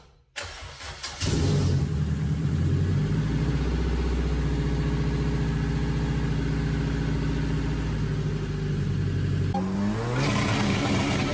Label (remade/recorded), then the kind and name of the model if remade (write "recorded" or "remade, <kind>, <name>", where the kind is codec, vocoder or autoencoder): recorded